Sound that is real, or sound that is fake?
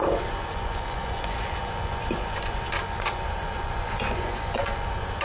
fake